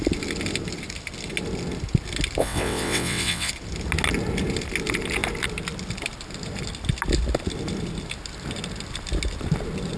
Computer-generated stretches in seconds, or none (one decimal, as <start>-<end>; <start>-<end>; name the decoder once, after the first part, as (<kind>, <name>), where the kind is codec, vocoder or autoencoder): 2.4-3.5 (vocoder, WaveNeXt)